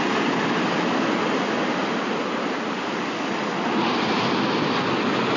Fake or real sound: real